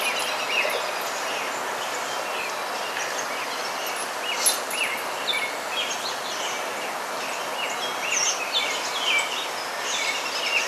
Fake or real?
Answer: real